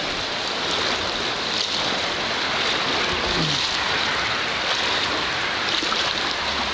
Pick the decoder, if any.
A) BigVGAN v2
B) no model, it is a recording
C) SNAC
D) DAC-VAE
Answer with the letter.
A